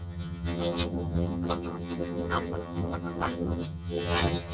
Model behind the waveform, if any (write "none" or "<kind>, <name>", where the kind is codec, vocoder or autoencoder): vocoder, HiFi-GAN